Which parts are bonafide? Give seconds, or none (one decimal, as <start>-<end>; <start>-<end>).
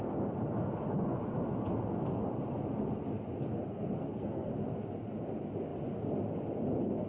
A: 0.0-3.7; 4.5-7.1